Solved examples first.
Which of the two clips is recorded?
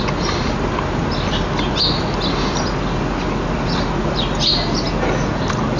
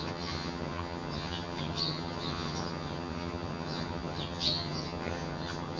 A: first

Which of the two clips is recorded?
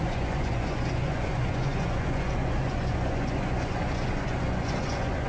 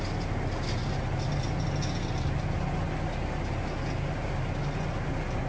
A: second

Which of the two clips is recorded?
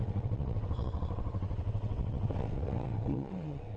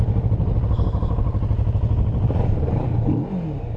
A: second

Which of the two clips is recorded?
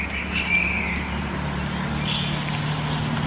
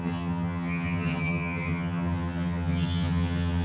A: first